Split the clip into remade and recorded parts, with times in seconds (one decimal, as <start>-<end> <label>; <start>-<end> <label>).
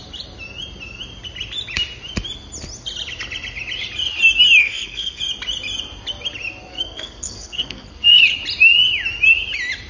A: 0.0-4.6 recorded; 4.6-5.2 remade; 5.2-6.7 recorded; 6.7-8.2 remade; 8.2-9.9 recorded